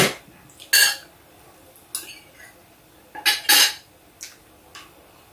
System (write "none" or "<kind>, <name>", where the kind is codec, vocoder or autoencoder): none